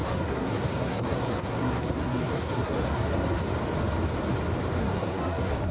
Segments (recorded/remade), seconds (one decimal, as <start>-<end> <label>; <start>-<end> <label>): 0.0-3.4 remade; 3.4-4.8 recorded; 4.8-5.7 remade